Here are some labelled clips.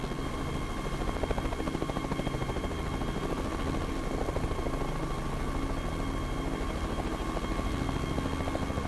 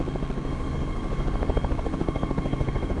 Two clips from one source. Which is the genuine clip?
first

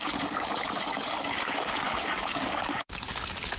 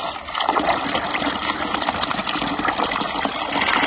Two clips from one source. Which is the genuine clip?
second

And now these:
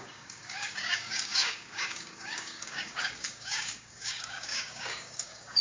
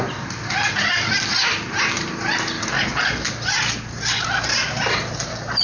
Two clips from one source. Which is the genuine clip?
second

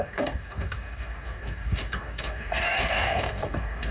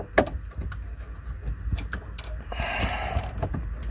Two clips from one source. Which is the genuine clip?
second